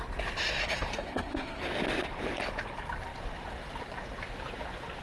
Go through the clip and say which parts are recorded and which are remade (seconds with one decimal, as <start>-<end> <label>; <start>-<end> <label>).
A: 0.0-0.9 recorded; 0.9-1.6 remade; 1.6-5.0 recorded